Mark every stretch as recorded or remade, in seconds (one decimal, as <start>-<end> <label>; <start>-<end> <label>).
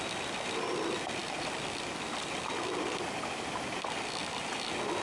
0.0-5.0 recorded